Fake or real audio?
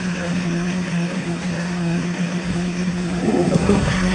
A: fake